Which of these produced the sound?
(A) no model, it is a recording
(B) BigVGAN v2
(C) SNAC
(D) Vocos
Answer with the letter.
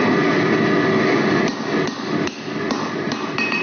B